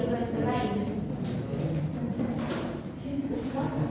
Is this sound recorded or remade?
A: recorded